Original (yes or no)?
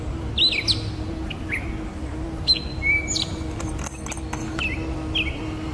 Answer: yes